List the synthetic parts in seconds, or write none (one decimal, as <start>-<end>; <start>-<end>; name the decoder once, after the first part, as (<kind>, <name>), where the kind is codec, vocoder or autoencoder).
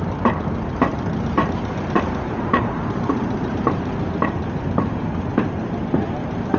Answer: 0.0-5.3 (vocoder, BigVGAN v2); 5.8-6.6